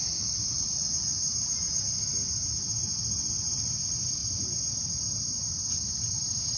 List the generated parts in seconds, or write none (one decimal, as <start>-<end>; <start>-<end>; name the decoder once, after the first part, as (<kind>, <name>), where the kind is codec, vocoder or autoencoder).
none